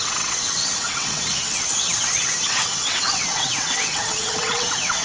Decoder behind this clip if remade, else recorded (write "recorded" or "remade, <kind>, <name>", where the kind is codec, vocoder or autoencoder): remade, vocoder, WaveNeXt